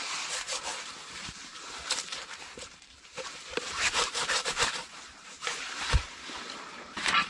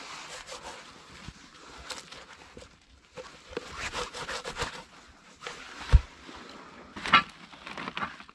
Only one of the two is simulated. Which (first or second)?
first